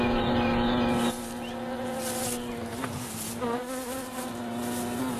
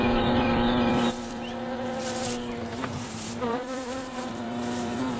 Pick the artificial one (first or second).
second